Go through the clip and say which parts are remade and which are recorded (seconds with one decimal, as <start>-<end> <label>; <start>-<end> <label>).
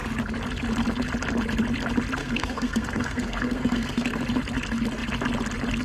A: 0.0-2.2 recorded; 2.2-4.2 remade; 4.2-5.8 recorded